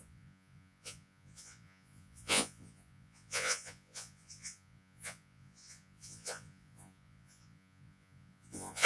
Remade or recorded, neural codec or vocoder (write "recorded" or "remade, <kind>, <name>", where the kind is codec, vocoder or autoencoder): remade, vocoder, Vocos